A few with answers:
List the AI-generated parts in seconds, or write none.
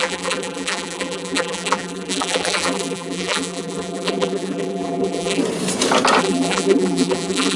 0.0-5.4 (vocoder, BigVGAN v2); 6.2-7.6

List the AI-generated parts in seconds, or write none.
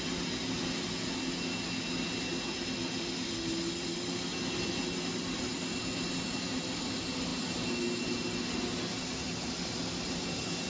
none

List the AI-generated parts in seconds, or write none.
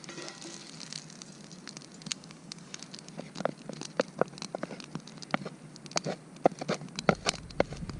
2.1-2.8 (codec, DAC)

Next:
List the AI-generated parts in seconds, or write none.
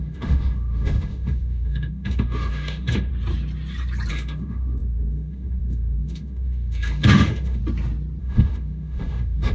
0.0-3.1 (autoencoder, DAC-VAE); 4.1-7.6; 8.2-9.5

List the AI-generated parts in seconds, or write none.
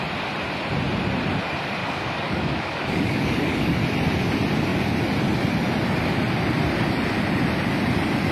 1.8-3.8 (codec, DAC)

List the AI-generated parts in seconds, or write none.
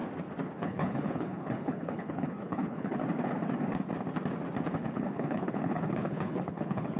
0.6-3.0 (codec, HILCodec); 4.7-7.0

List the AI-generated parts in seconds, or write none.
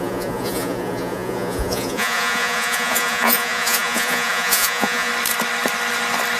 0.0-5.1 (vocoder, Vocos)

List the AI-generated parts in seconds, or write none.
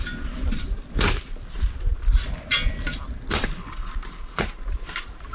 none